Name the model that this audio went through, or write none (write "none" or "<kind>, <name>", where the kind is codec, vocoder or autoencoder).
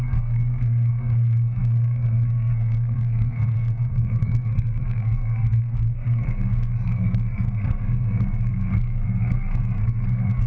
codec, SNAC